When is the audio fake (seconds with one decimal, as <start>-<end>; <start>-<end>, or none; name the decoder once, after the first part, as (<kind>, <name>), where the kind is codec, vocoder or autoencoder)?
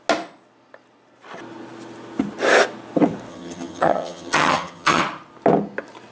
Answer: 3.3-5.0 (vocoder, HiFi-GAN)